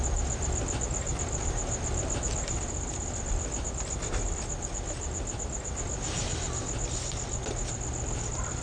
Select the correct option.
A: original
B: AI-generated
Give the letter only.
A